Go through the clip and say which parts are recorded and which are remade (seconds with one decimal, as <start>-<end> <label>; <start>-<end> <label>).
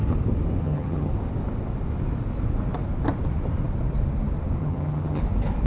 0.0-0.6 recorded; 0.6-1.1 remade; 1.1-4.6 recorded; 4.6-5.2 remade; 5.2-5.7 recorded